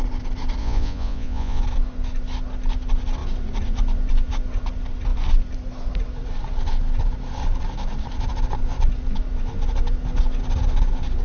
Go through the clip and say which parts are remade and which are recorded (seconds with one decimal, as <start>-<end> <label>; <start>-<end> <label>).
0.0-0.6 recorded; 0.6-1.6 remade; 1.6-11.2 recorded